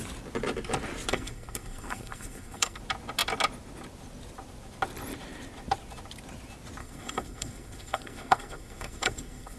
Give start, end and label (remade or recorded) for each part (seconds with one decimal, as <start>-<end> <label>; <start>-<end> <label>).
0.0-1.1 recorded; 1.1-2.8 remade; 2.8-6.8 recorded; 6.8-9.6 remade